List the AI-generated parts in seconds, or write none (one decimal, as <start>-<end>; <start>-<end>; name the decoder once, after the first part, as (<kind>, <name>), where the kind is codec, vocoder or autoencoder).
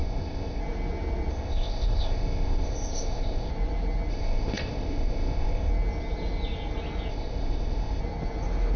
0.0-0.6 (codec, ZipCodec); 1.3-3.5; 4.1-5.7; 7.1-8.0